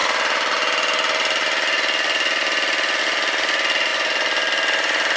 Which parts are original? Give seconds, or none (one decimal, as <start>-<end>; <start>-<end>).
0.0-5.2